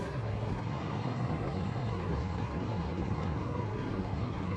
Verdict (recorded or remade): remade